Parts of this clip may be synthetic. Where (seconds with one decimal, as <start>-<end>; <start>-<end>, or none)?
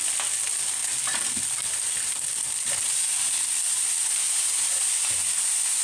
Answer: none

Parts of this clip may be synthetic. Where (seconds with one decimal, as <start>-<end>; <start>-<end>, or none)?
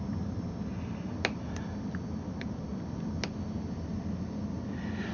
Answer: none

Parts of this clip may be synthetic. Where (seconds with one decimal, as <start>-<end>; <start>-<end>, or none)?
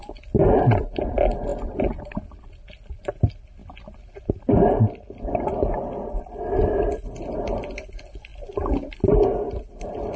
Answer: none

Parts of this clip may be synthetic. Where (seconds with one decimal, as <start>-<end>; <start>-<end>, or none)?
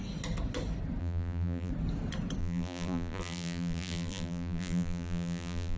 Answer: 1.0-1.7; 2.4-5.8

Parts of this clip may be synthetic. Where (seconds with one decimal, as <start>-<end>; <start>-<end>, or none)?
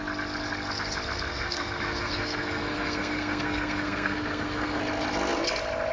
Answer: 1.3-4.8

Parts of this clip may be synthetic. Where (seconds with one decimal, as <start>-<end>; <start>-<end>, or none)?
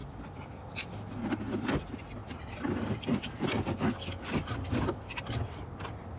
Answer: none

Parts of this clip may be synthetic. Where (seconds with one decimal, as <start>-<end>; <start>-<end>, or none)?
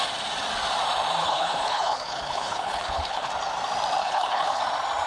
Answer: 1.2-3.3; 4.0-4.6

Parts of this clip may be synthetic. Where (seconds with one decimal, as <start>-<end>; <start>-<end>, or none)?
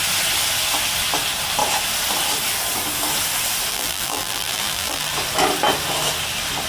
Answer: 3.7-5.1